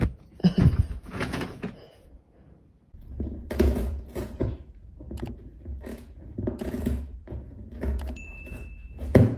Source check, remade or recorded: remade